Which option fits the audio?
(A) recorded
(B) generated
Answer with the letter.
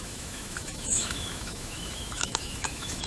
B